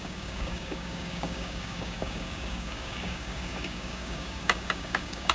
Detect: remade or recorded remade